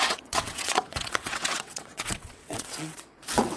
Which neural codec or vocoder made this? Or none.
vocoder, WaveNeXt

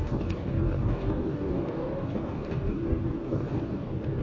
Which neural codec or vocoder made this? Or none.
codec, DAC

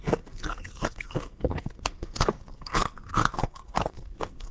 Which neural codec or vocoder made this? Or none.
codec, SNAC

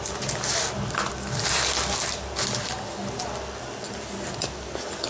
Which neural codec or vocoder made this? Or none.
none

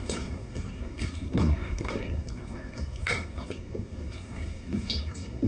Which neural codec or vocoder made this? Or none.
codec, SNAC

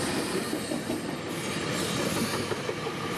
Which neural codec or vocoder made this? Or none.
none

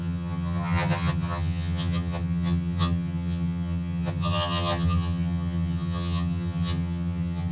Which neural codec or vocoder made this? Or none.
vocoder, HiFi-GAN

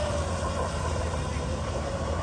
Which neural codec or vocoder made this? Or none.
none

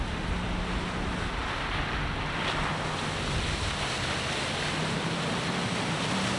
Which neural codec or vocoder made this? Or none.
none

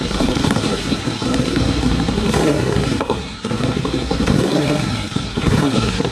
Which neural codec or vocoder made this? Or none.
codec, SNAC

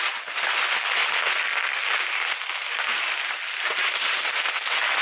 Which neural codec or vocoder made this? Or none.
none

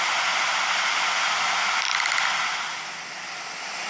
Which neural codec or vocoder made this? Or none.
none